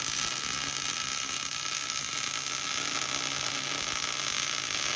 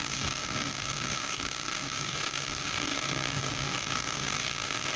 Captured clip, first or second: first